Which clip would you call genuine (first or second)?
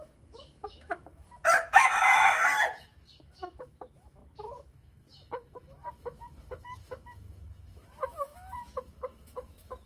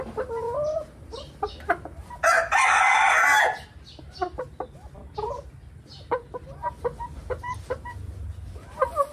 second